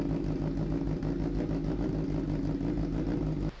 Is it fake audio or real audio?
real